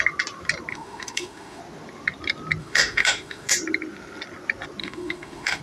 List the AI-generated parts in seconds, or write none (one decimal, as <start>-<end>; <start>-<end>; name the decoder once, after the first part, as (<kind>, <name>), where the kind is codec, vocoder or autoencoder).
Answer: 0.7-1.6 (autoencoder, DAC-VAE); 2.6-3.5; 4.8-5.6